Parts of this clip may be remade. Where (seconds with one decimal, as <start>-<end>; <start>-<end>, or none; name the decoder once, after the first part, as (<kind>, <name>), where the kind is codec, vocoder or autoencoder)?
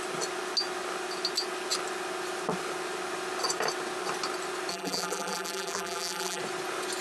4.7-6.4 (vocoder, BigVGAN v2)